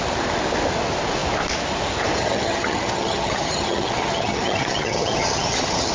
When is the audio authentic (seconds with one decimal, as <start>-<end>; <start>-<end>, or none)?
0.0-2.2